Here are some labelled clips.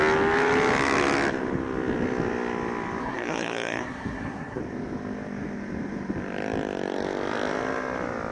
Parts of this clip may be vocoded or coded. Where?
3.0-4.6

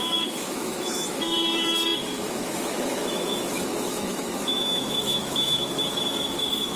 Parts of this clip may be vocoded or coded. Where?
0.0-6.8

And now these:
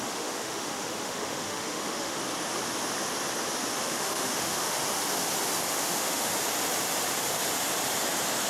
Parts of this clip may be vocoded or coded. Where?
0.0-2.2; 3.8-4.8; 5.7-6.3

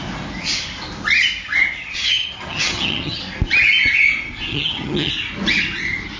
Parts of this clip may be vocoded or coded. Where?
1.8-3.2; 4.5-5.1

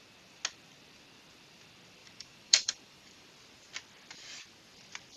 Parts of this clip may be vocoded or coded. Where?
2.0-3.3